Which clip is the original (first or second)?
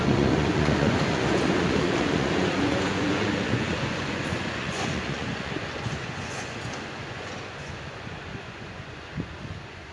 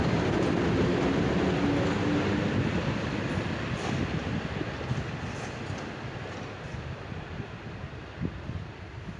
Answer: second